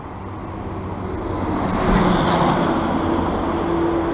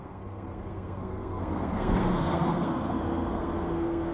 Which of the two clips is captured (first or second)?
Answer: first